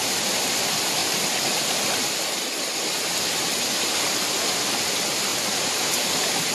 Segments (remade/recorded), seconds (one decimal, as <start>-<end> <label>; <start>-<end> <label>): 0.0-5.3 recorded; 5.3-6.5 remade